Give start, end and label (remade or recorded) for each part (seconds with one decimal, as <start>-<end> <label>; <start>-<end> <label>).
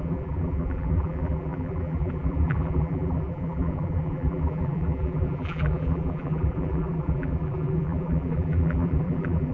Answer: 0.0-9.5 remade